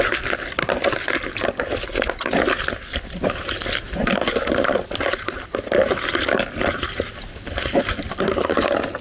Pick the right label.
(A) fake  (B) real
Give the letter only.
B